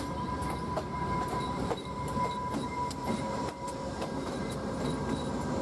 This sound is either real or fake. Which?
fake